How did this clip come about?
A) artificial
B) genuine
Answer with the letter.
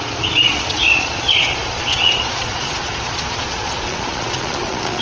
A